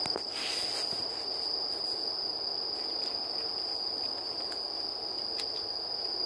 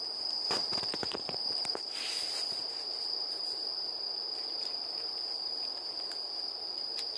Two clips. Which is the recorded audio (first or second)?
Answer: first